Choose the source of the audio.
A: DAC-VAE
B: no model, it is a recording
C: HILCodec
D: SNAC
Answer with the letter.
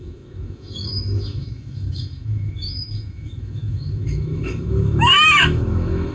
A